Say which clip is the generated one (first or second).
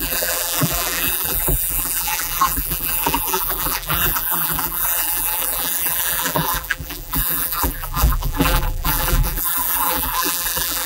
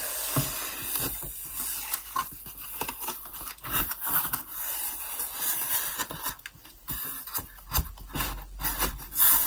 first